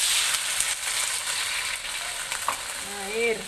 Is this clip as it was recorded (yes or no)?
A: yes